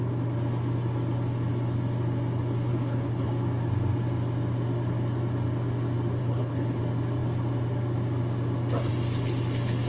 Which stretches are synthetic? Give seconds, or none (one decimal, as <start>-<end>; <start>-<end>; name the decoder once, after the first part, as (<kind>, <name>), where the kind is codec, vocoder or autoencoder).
2.7-3.3 (codec, HILCodec); 6.2-6.8